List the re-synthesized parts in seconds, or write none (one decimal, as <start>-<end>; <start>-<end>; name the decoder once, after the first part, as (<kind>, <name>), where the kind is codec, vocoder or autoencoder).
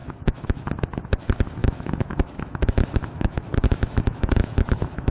0.0-0.6 (autoencoder, DAC-VAE); 1.6-5.1